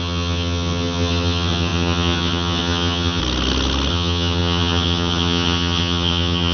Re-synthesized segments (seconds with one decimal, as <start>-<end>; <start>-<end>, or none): 0.0-3.2; 3.9-6.5